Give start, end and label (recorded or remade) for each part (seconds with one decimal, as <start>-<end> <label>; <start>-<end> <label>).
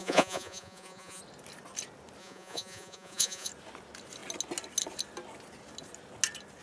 0.0-1.2 remade; 1.2-2.2 recorded; 2.2-3.5 remade; 3.5-6.6 recorded